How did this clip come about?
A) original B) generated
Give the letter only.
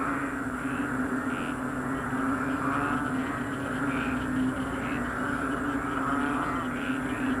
A